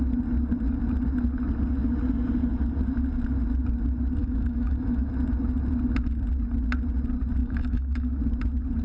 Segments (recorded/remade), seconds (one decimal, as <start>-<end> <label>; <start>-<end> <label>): 0.0-4.2 recorded; 4.2-5.1 remade; 5.1-7.4 recorded; 7.4-8.2 remade; 8.2-8.8 recorded